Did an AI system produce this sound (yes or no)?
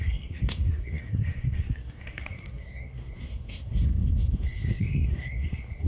yes